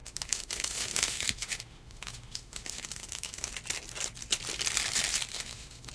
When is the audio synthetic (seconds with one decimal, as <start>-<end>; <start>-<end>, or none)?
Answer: 0.0-3.5; 5.3-5.9